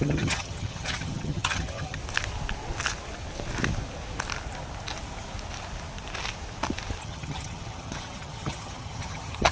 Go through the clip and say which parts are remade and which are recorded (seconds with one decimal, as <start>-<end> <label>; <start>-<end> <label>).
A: 0.0-2.0 remade; 2.0-7.0 recorded; 7.0-9.5 remade